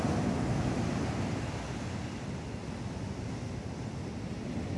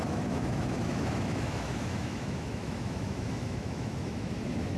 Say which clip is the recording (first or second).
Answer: first